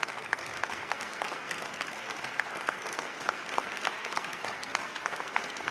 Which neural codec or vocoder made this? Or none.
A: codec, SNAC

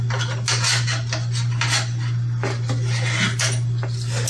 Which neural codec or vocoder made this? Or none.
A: none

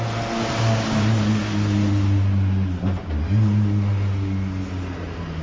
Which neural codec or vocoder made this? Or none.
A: none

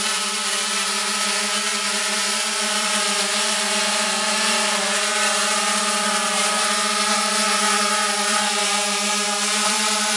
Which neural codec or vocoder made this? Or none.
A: vocoder, BigVGAN v2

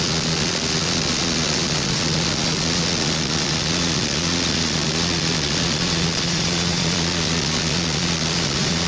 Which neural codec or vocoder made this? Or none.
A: vocoder, Vocos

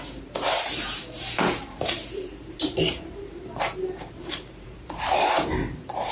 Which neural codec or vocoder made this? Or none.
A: vocoder, BigVGAN v2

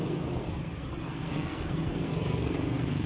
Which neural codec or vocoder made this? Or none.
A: codec, SNAC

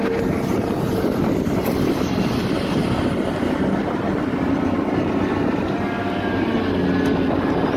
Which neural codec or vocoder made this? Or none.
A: none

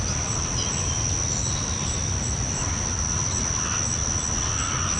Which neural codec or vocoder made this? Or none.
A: none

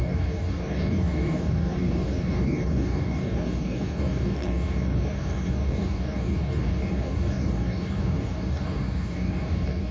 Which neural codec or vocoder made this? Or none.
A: codec, DAC